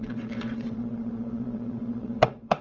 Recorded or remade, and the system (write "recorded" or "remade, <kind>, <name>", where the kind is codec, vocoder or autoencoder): remade, vocoder, WaveNeXt